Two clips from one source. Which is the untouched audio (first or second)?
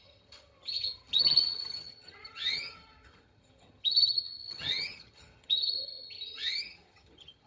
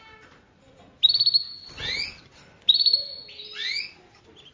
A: second